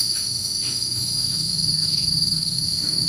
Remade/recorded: remade